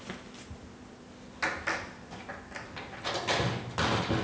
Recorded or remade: recorded